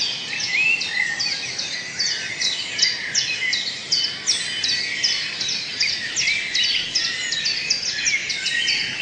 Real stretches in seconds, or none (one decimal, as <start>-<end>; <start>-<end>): 0.0-2.3; 2.8-8.2